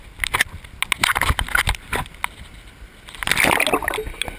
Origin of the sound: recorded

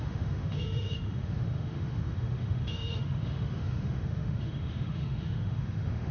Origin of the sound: remade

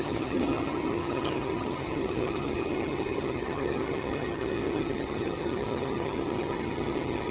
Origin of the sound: remade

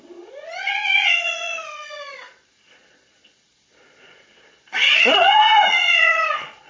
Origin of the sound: remade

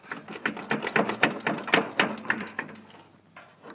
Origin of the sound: recorded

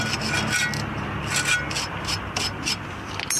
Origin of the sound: recorded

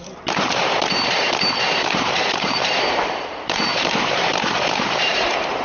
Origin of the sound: remade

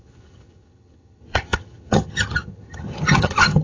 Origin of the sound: remade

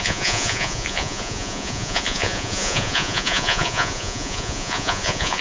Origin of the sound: remade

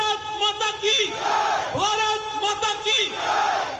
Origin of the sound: remade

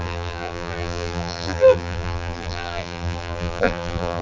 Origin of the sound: remade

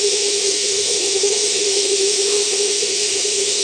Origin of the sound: remade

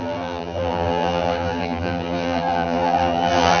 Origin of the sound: remade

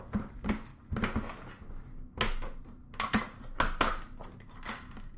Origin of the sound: recorded